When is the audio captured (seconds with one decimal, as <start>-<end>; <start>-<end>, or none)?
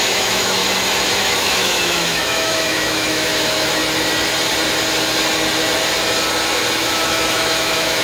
0.6-1.2; 3.8-6.8